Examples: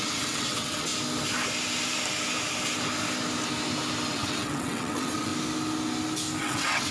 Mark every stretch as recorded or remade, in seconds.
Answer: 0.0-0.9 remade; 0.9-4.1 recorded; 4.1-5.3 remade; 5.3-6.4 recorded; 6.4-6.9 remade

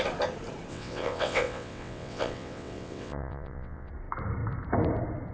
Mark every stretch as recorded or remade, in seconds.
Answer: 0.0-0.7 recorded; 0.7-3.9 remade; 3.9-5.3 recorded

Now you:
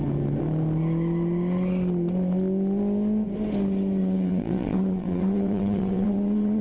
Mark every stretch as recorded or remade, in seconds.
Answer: 0.0-4.0 recorded; 4.0-6.6 remade